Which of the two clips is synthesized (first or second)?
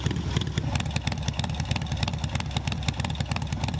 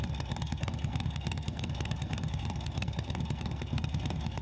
second